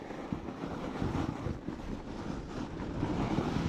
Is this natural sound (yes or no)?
yes